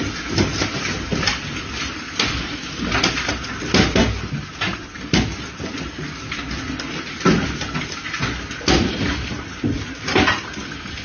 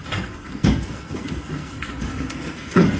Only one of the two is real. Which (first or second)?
first